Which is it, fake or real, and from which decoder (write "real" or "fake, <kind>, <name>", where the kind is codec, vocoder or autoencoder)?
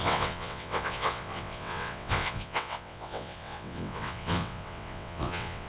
fake, vocoder, WaveNeXt